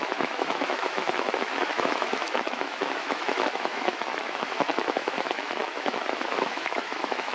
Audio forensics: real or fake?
fake